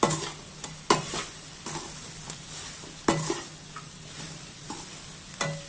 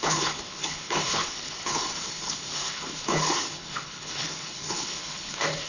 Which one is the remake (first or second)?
second